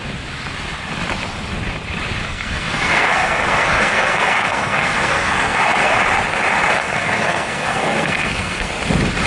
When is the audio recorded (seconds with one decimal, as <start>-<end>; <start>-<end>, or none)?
0.0-2.2; 5.9-6.8; 8.7-9.3

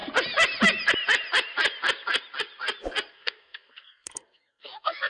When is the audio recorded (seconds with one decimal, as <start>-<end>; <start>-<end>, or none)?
0.0-3.1

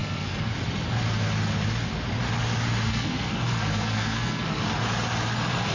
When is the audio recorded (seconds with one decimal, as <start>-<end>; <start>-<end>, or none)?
0.5-2.9; 4.6-5.7

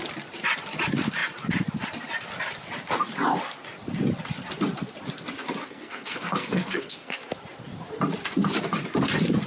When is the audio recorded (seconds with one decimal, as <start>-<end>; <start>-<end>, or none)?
0.0-5.6; 7.2-9.5

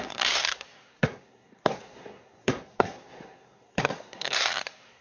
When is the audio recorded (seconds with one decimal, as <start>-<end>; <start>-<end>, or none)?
none